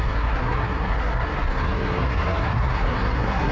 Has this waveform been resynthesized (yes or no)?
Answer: yes